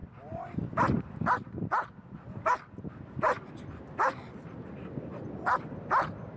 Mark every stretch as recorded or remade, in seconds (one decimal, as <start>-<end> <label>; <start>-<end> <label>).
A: 0.0-6.4 recorded